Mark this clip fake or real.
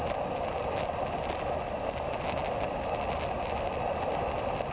real